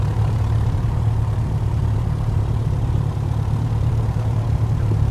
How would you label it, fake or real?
fake